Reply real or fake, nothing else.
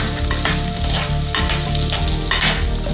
real